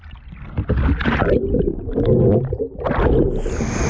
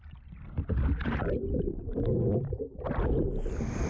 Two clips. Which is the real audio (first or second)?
first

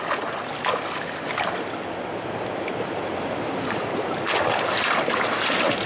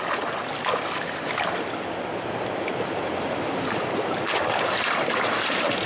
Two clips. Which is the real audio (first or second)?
first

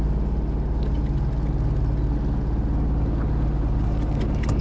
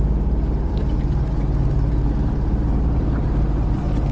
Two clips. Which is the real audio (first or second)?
first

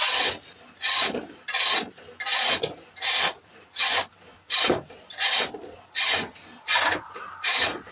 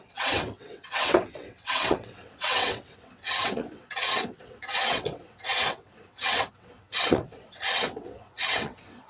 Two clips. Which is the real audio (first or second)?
first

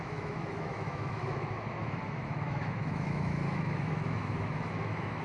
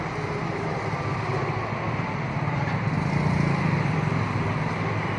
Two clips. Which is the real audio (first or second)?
second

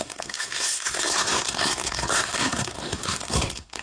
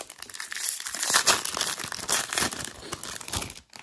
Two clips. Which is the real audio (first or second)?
second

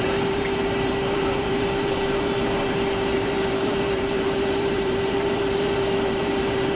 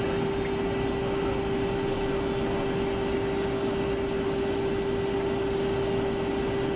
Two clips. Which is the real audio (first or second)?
second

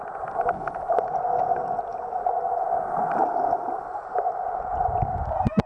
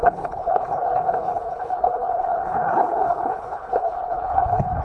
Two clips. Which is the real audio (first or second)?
first